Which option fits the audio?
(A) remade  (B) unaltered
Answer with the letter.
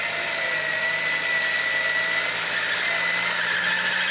B